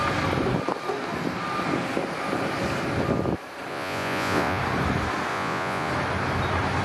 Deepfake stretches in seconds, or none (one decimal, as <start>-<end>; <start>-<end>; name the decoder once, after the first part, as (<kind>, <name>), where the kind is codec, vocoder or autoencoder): 3.7-4.6 (vocoder, Vocos); 5.3-5.9